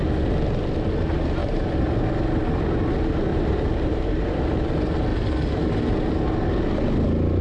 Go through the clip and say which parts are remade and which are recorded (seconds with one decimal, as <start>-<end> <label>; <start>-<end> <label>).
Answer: 0.0-1.4 recorded; 1.4-2.0 remade; 2.0-3.3 recorded; 3.3-4.4 remade; 4.4-7.4 recorded